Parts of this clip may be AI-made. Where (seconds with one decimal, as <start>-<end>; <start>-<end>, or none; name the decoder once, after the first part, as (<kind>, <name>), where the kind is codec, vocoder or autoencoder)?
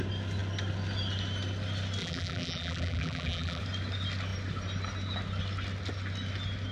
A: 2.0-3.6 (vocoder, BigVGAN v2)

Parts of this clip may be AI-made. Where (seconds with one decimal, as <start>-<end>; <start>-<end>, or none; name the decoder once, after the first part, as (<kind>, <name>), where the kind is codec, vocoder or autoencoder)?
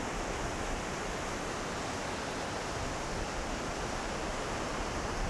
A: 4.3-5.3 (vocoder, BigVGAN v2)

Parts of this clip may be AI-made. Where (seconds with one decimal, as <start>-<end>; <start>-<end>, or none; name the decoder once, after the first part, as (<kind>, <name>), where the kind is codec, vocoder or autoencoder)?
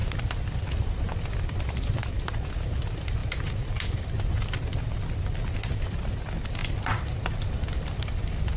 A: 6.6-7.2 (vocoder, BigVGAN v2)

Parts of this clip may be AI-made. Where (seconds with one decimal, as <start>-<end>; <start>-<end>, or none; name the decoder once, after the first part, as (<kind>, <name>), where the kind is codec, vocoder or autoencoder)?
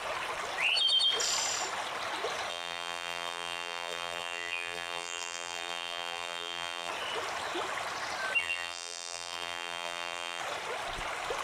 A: 2.5-6.9 (vocoder, BigVGAN v2); 8.4-10.4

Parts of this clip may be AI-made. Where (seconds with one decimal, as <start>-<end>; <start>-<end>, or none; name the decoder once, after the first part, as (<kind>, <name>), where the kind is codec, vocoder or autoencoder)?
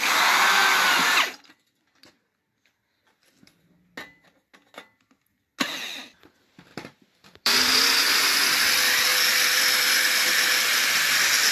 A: 0.6-2.5 (vocoder, BigVGAN v2); 6.7-8.0